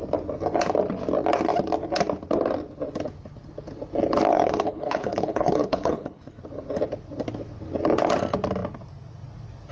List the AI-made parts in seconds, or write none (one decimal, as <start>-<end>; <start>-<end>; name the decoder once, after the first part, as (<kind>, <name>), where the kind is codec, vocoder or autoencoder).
4.3-6.4 (codec, HILCodec)